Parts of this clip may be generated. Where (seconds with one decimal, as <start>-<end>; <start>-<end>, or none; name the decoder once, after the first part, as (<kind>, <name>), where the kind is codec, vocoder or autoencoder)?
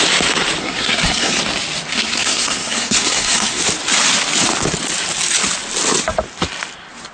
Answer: 0.6-1.4 (codec, SNAC); 1.9-3.6